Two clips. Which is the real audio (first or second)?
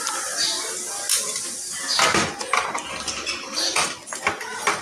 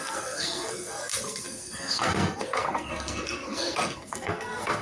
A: first